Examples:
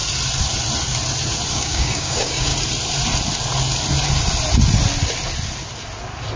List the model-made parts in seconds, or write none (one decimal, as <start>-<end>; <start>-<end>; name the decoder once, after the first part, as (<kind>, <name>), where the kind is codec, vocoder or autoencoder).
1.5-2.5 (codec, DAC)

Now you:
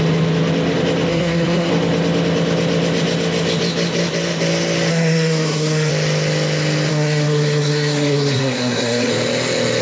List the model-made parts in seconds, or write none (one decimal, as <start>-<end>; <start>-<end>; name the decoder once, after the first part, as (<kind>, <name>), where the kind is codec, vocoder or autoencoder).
1.1-1.7 (codec, SNAC); 4.9-5.9; 6.9-9.1

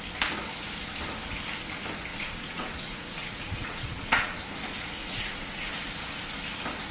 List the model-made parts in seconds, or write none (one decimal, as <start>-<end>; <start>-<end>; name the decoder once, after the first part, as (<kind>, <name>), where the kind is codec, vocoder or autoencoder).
2.1-4.4 (vocoder, Vocos); 5.0-5.7

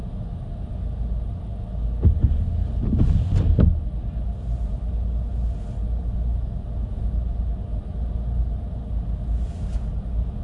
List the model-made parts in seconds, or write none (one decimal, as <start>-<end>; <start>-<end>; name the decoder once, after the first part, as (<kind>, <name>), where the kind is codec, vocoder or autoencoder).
none

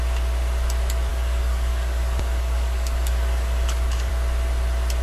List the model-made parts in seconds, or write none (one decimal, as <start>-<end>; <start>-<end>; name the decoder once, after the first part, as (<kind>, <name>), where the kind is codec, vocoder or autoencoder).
1.1-4.1 (codec, DAC)

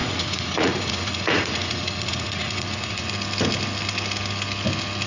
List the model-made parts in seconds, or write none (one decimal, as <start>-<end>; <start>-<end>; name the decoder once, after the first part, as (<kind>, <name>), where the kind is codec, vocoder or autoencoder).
0.0-3.1 (vocoder, Vocos)

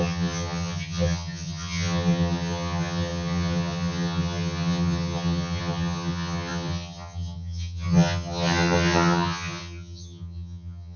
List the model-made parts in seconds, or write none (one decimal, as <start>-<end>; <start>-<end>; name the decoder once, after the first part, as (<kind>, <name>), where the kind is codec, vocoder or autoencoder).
0.0-11.0 (vocoder, HiFi-GAN)